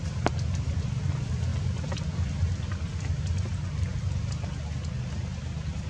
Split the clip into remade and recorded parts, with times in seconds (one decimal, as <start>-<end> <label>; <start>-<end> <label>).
0.0-5.9 recorded